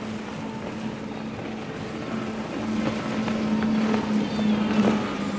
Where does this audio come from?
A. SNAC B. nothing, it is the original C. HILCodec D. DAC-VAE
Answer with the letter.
B